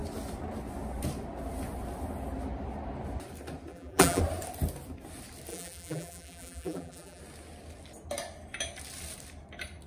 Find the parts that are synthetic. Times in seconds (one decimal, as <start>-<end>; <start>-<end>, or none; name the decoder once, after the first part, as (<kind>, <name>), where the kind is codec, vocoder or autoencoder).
3.7-4.2 (vocoder, BigVGAN v2); 5.5-7.2